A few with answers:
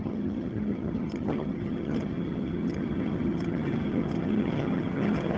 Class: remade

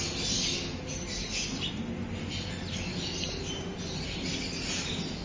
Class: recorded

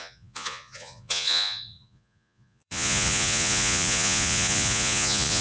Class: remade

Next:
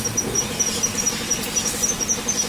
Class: recorded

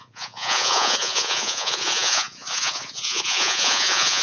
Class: remade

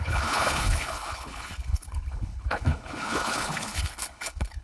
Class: remade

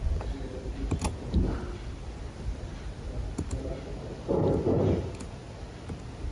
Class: recorded